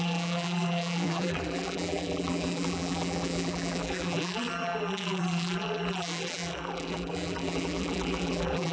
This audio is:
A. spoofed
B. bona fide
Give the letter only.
A